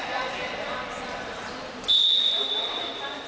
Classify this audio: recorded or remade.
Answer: recorded